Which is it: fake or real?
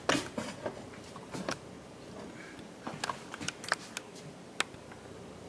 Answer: real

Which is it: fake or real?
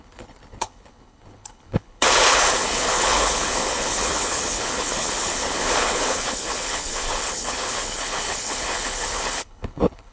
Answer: fake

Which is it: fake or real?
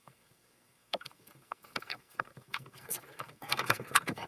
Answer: fake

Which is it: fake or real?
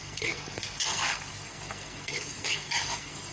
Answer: fake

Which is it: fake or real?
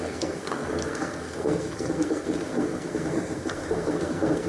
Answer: fake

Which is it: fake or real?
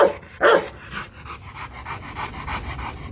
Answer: real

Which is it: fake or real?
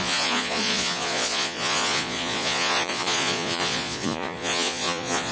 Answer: fake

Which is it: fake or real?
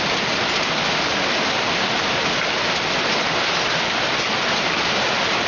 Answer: real